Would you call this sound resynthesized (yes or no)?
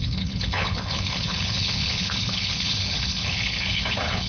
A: yes